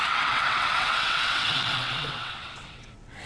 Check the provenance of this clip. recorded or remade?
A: remade